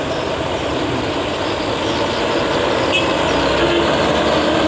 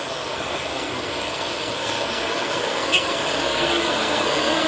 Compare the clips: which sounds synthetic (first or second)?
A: second